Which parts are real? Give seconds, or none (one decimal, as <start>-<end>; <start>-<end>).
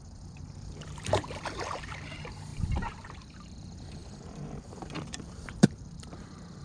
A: none